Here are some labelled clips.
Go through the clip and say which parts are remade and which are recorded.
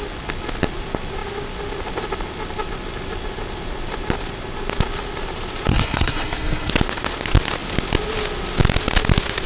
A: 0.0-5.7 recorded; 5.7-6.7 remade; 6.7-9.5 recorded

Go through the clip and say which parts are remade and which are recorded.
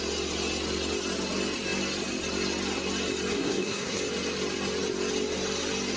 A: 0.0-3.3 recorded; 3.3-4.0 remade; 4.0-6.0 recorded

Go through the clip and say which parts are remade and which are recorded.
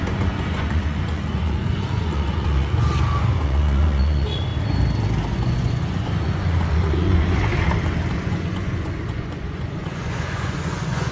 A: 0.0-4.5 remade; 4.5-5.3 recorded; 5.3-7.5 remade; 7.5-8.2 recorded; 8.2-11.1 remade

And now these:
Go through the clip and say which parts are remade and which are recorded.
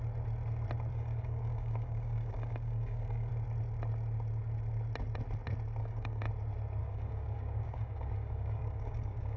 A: 0.0-0.9 recorded; 0.9-3.3 remade; 3.3-5.8 recorded; 5.8-6.3 remade; 6.3-6.8 recorded; 6.8-9.4 remade